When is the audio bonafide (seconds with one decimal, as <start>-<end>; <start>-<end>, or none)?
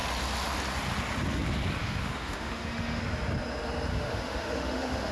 0.0-1.8; 3.0-3.9